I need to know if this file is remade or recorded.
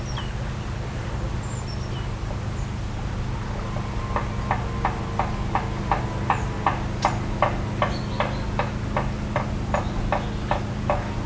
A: recorded